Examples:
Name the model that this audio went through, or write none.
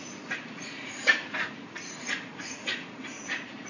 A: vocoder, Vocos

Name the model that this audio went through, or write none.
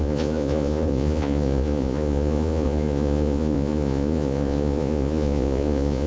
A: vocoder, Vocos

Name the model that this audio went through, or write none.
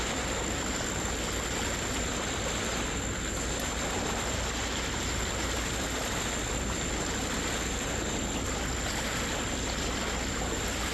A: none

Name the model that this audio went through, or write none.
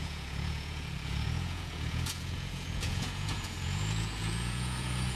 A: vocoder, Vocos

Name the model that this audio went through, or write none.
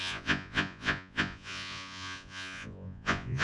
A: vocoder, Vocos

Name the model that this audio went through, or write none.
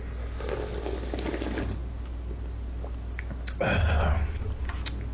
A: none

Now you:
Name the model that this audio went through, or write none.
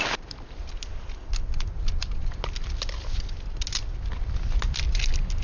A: none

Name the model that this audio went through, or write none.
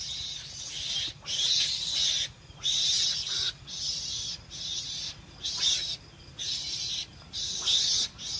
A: none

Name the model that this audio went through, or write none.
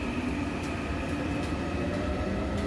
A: none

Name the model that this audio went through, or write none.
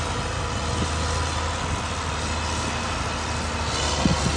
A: none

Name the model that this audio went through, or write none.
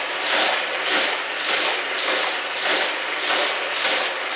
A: none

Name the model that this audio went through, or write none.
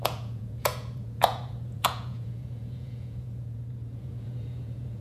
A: vocoder, Vocos